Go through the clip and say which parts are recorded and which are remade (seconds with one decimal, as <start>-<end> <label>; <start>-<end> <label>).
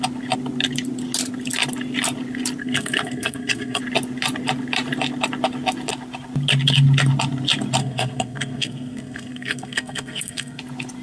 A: 0.0-2.6 recorded; 2.6-3.8 remade; 3.8-7.8 recorded; 7.8-10.6 remade; 10.6-11.0 recorded